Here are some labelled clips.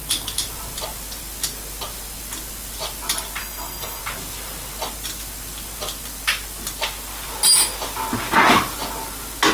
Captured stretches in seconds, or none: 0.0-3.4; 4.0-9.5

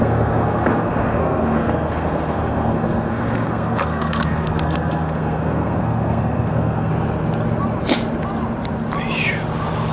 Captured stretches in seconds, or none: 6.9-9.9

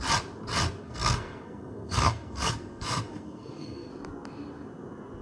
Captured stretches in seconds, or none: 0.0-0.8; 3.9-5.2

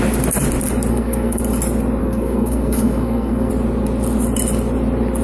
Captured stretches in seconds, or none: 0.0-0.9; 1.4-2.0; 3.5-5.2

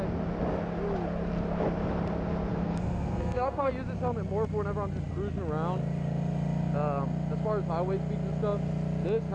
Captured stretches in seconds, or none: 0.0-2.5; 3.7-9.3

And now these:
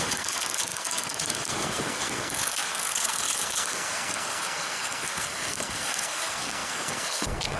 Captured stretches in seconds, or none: none

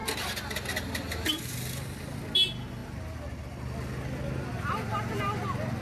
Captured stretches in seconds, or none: 0.0-5.8

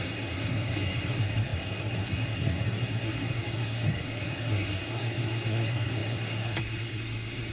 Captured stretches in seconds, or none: none